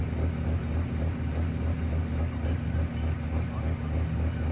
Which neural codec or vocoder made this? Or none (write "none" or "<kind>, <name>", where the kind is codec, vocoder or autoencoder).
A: none